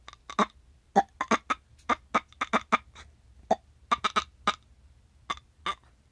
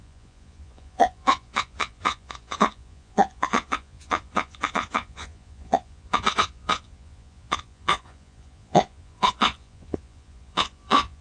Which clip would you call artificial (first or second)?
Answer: second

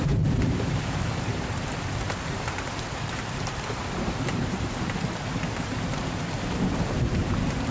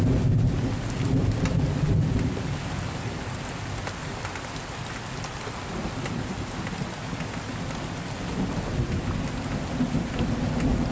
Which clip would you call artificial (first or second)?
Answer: first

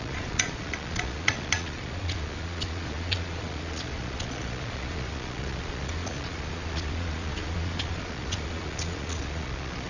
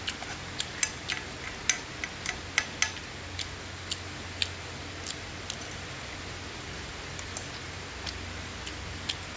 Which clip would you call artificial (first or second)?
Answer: first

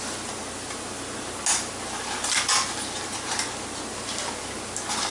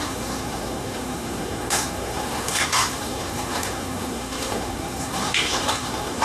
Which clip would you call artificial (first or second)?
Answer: second